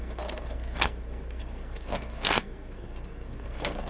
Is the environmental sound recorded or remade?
remade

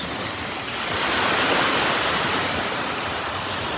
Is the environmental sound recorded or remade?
recorded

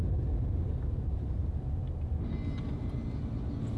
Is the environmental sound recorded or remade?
recorded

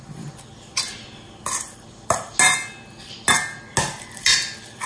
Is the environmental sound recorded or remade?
recorded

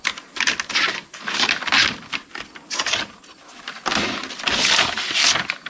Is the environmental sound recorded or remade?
recorded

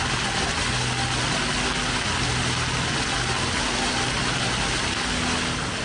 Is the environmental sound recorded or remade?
recorded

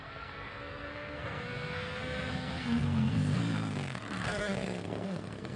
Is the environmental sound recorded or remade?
remade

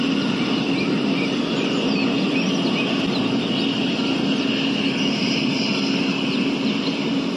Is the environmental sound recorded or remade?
recorded